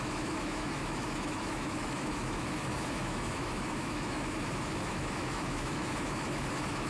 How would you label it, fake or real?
fake